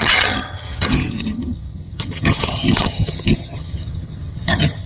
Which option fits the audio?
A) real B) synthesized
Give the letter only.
B